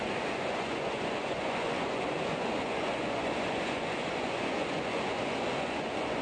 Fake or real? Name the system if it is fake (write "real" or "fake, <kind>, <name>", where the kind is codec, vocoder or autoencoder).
fake, vocoder, Vocos